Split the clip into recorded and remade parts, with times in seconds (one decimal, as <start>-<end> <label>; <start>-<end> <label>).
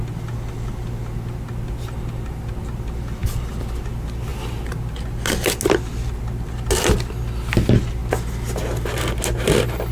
0.0-9.9 recorded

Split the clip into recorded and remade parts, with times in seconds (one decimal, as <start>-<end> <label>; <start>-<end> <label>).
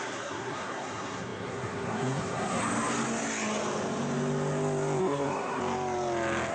0.0-2.6 remade; 2.6-5.0 recorded; 5.0-5.6 remade; 5.6-6.5 recorded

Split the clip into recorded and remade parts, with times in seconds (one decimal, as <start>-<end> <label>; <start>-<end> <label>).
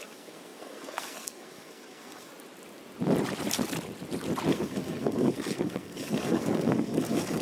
0.0-2.3 remade; 2.3-4.5 recorded; 4.5-7.4 remade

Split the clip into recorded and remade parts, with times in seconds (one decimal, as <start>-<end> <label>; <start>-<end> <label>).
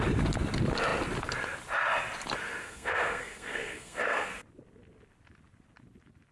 0.0-2.6 recorded; 2.6-4.3 remade; 4.3-6.3 recorded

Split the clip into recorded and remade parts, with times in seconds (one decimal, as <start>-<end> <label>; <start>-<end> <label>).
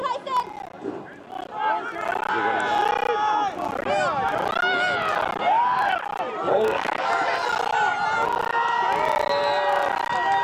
0.0-6.5 recorded; 6.5-7.1 remade; 7.1-10.4 recorded